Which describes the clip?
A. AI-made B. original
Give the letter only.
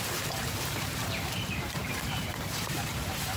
A